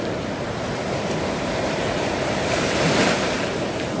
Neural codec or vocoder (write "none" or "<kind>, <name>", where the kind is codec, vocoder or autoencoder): vocoder, BigVGAN v2